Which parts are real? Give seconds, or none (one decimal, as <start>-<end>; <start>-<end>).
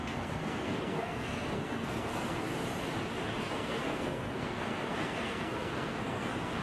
2.5-3.4